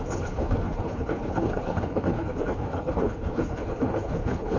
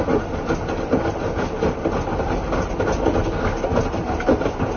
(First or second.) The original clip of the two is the second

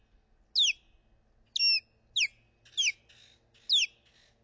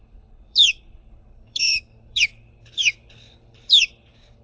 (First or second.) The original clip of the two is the first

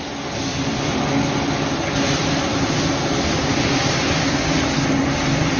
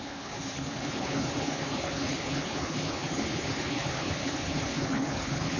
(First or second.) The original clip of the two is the first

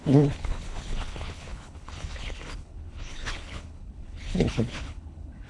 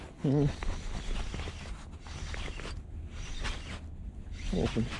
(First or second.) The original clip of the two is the second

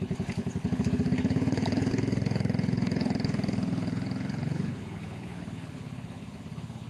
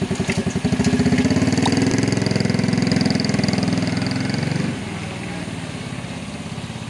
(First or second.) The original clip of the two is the second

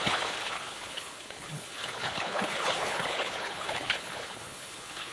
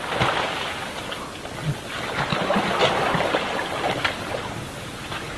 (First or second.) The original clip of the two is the second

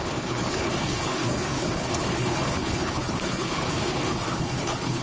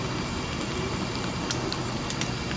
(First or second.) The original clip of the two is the second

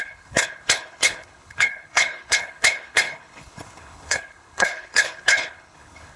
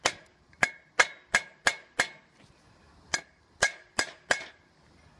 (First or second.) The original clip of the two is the second